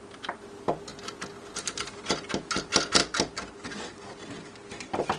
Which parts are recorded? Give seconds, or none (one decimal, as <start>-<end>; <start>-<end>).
0.0-5.2